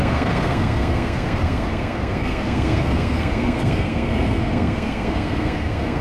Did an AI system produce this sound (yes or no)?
yes